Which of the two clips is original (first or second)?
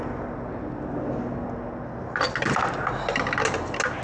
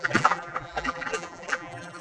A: first